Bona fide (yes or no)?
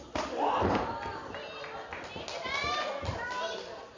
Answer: yes